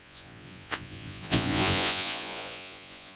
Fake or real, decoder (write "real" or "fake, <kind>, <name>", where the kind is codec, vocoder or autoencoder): fake, vocoder, Vocos